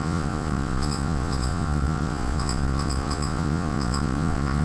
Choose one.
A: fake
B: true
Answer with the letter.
A